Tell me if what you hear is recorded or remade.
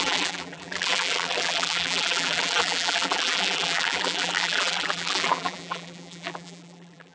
remade